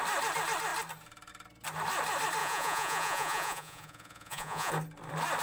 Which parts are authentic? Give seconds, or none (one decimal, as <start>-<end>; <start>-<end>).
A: 0.0-2.4; 4.7-5.4